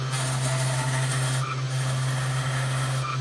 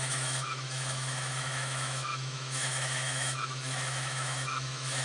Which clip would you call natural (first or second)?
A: first